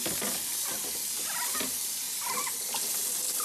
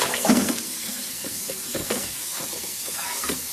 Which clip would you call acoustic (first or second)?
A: first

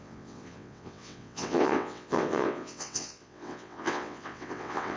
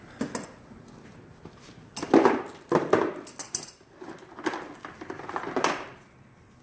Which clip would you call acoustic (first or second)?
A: second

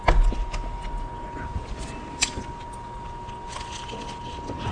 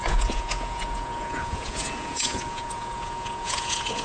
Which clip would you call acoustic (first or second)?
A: first